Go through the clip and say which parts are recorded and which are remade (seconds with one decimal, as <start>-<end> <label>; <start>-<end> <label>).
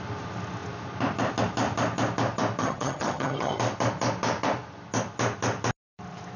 0.0-2.6 recorded; 2.6-3.6 remade; 3.6-6.4 recorded